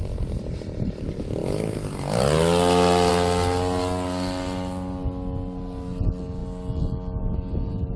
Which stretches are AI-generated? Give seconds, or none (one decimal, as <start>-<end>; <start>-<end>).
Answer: none